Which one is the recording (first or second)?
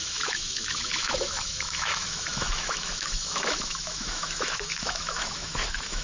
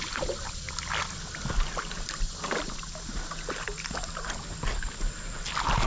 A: second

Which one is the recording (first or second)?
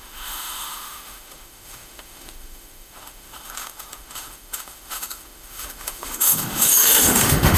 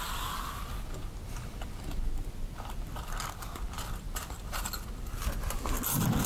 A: second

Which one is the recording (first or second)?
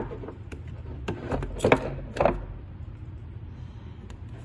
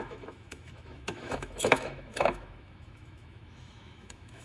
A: first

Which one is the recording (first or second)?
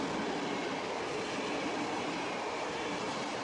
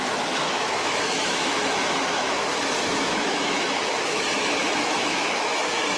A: first